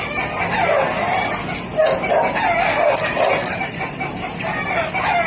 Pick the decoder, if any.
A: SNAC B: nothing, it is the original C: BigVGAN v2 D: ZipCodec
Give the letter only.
B